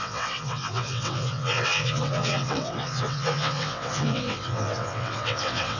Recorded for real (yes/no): no